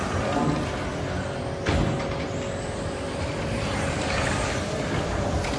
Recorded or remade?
recorded